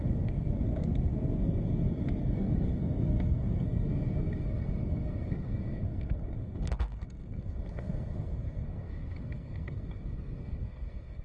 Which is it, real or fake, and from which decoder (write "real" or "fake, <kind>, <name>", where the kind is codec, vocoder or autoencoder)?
fake, codec, SNAC